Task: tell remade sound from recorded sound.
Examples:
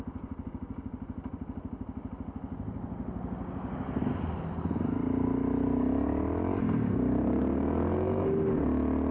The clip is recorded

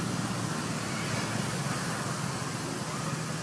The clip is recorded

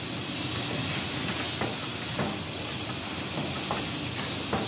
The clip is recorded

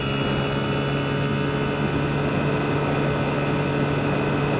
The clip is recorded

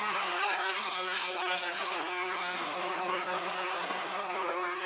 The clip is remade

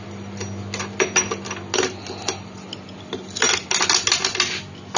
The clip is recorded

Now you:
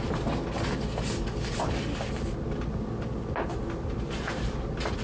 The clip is recorded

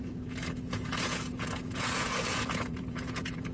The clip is remade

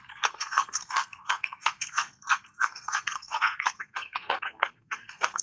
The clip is remade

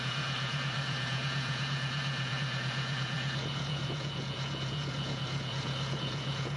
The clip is remade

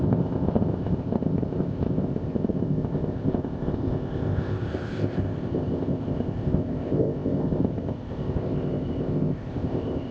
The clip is remade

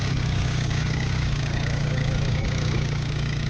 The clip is remade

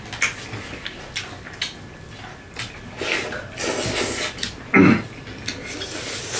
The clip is recorded